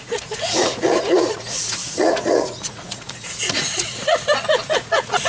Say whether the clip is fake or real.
fake